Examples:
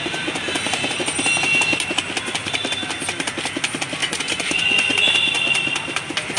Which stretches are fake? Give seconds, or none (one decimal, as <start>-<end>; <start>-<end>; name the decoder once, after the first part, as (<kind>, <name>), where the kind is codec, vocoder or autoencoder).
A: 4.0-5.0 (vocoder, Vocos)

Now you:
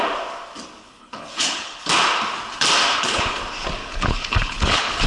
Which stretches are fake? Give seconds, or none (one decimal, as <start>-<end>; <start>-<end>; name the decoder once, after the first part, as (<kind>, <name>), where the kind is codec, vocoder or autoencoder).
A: 0.8-1.8 (codec, HILCodec); 2.9-3.4; 3.8-5.1

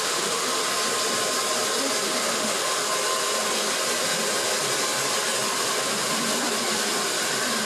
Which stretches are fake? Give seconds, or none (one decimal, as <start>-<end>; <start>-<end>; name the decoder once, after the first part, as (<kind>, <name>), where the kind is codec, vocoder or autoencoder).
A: 0.0-0.6 (autoencoder, DAC-VAE); 2.3-2.8

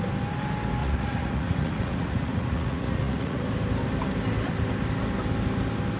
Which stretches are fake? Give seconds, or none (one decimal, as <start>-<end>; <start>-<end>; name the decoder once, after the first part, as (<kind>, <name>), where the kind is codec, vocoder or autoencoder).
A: 0.8-3.4 (vocoder, Vocos)